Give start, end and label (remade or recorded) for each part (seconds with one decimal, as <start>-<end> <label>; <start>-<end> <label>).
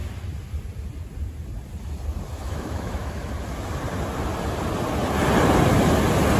0.0-2.4 recorded; 2.4-3.3 remade; 3.3-6.4 recorded